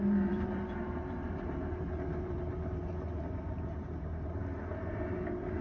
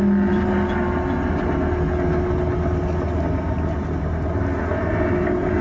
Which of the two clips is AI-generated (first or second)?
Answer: first